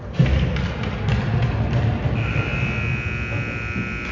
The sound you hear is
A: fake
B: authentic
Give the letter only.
B